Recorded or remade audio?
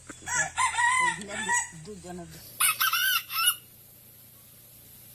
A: recorded